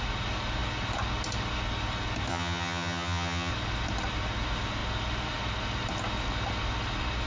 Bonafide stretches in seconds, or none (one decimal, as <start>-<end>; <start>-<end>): 0.0-2.3; 3.5-7.3